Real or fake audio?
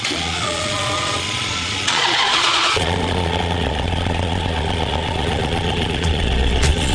fake